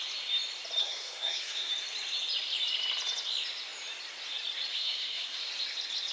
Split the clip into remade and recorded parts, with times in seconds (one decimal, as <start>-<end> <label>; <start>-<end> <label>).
0.0-0.8 recorded; 0.8-1.7 remade; 1.7-4.7 recorded; 4.7-5.5 remade; 5.5-6.1 recorded